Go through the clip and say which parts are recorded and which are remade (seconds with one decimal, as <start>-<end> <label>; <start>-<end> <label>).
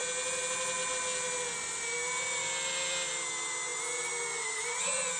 0.0-5.2 recorded